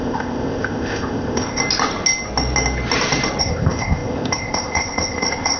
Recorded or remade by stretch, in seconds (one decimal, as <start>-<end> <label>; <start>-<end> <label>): 0.0-1.6 remade; 1.6-3.4 recorded; 3.4-5.6 remade